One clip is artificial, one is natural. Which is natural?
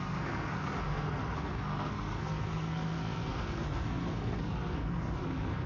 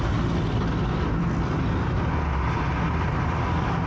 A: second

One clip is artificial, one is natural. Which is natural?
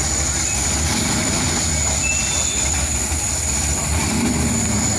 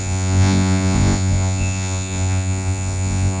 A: first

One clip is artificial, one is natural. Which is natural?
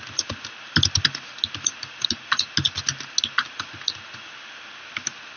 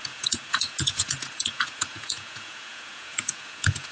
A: first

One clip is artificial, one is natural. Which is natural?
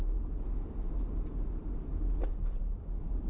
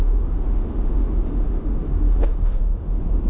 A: first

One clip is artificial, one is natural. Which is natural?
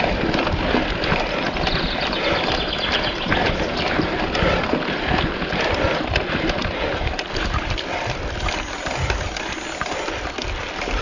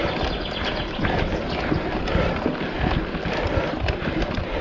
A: second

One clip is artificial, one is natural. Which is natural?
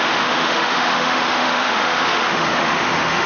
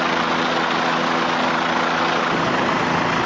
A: second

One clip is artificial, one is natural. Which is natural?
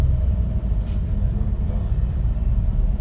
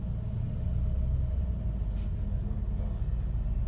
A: second